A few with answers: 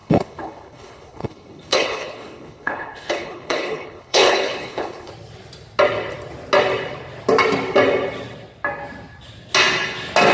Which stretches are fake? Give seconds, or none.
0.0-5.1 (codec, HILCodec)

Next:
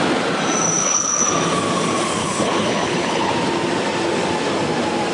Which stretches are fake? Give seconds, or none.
0.8-1.3 (codec, HILCodec); 2.2-3.3

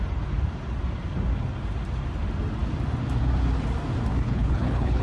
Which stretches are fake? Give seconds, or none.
4.1-5.0 (codec, HILCodec)

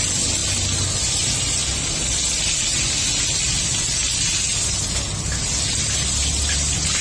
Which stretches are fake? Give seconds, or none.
none

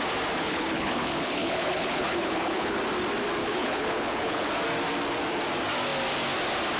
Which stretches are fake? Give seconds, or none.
0.4-2.8 (codec, HILCodec); 3.4-4.5

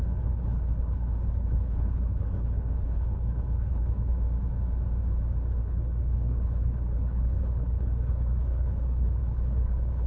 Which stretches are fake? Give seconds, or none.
0.0-4.1 (codec, HILCodec); 5.6-10.1

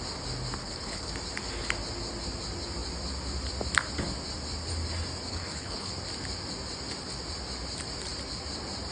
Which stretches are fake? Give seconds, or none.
0.6-1.1 (codec, HILCodec); 5.3-5.9

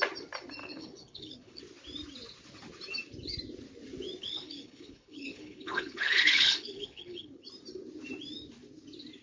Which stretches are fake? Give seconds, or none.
0.6-1.6 (codec, HILCodec); 4.2-7.4